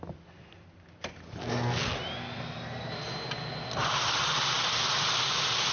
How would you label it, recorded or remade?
recorded